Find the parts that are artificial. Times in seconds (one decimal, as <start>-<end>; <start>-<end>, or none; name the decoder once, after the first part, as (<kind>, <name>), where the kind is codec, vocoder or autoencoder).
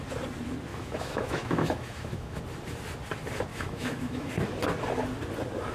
0.7-2.4 (autoencoder, DAC-VAE); 3.5-4.3